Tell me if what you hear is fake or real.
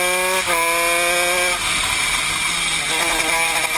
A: real